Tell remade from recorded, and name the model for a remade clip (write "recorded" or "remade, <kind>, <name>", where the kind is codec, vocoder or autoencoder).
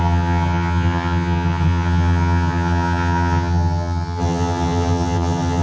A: remade, vocoder, HiFi-GAN